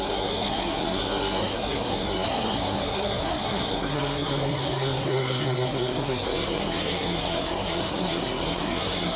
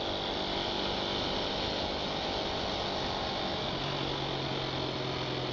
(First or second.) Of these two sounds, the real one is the second